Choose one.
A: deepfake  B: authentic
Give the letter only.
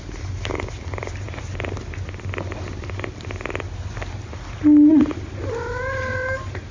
B